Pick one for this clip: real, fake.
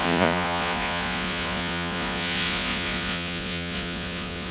fake